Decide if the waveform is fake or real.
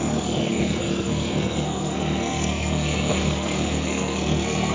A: fake